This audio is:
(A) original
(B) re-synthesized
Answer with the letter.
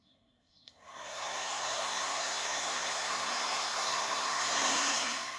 B